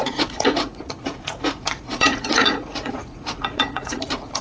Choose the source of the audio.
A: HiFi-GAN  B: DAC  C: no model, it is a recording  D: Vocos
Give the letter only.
D